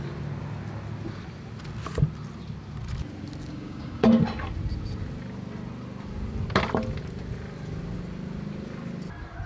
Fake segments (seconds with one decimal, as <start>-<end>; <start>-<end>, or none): 3.5-4.2